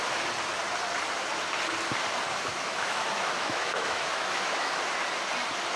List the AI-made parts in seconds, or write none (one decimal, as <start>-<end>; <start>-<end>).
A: 2.5-4.8